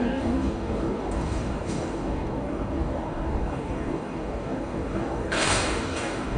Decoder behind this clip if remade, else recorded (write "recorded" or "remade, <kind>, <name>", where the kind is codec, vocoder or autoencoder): remade, codec, DAC